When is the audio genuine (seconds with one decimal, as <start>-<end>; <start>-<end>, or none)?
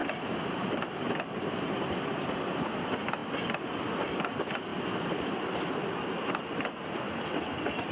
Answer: 0.0-7.9